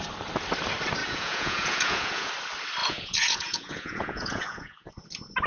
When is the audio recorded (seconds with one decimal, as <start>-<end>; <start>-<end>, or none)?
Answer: 0.0-1.0; 2.3-2.8; 4.9-5.5